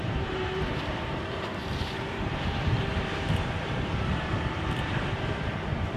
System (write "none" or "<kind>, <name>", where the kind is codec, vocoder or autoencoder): vocoder, BigVGAN v2